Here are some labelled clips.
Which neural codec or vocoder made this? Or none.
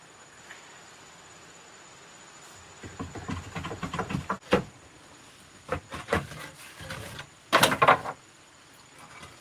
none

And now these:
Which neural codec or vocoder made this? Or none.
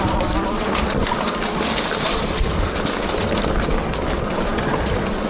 none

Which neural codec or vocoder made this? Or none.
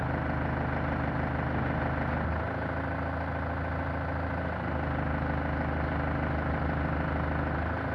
none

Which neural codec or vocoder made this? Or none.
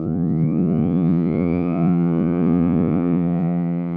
vocoder, Vocos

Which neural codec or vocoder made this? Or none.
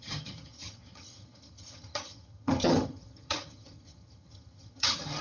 vocoder, HiFi-GAN